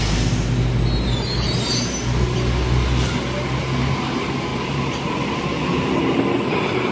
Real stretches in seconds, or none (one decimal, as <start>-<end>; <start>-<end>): 0.0-6.9